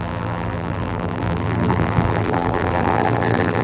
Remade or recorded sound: remade